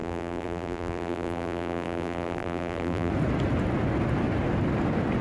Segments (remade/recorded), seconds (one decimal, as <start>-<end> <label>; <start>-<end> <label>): 0.0-3.1 remade; 3.1-5.2 recorded